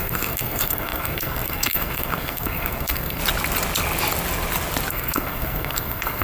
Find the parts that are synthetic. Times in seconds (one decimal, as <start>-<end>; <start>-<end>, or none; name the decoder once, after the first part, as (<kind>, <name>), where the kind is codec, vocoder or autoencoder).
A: 0.0-3.2 (codec, SNAC); 4.9-6.2